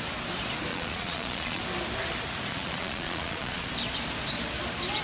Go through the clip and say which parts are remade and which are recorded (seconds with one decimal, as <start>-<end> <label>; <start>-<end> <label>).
0.0-0.7 recorded; 0.7-1.6 remade; 1.6-2.5 recorded; 2.5-3.7 remade; 3.7-5.0 recorded